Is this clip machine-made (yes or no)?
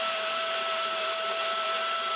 yes